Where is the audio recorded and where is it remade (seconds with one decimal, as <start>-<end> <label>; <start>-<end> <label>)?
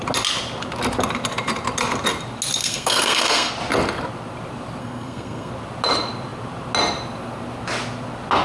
0.0-2.6 recorded; 2.6-3.5 remade; 3.5-4.8 recorded; 4.8-5.5 remade; 5.5-8.4 recorded